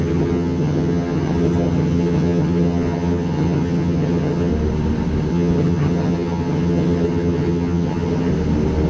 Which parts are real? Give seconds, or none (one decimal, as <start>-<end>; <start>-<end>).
4.5-5.3; 8.3-8.9